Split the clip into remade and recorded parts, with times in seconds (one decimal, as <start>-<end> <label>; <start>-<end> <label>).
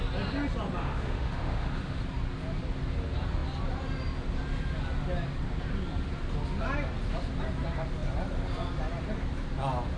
0.0-0.8 recorded; 0.8-2.0 remade; 2.0-10.0 recorded